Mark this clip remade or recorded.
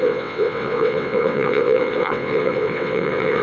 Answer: remade